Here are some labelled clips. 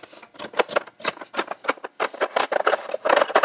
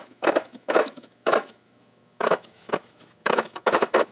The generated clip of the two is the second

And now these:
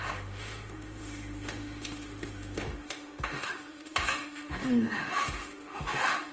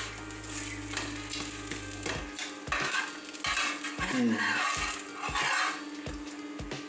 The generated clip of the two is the first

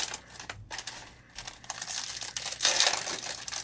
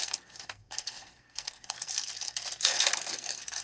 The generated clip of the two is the second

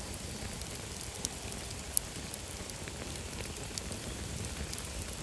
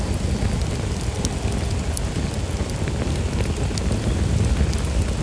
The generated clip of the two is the first